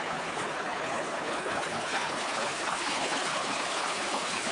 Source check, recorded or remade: remade